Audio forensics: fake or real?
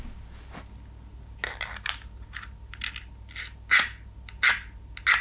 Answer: real